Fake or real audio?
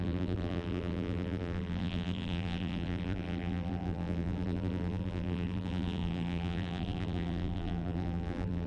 fake